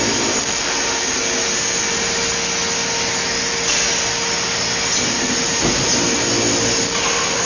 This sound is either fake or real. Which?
real